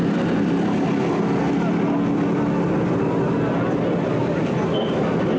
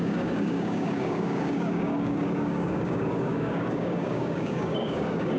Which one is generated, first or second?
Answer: second